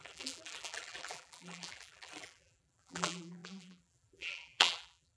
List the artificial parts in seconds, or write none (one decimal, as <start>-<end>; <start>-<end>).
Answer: 0.0-5.2